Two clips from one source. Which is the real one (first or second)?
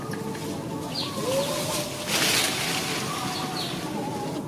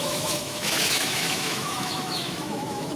first